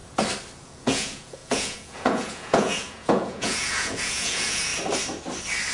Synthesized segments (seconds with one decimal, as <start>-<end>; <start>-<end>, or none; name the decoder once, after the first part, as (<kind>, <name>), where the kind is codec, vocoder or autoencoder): 0.6-4.7 (vocoder, Vocos)